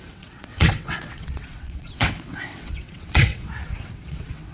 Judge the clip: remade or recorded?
remade